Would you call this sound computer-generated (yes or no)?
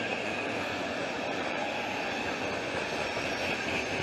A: yes